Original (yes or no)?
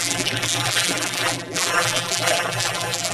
no